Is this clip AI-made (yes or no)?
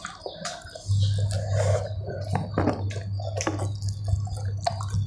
no